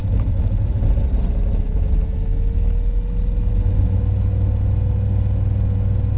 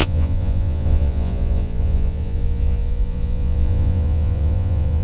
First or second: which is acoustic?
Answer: first